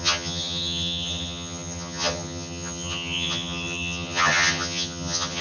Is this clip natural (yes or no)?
no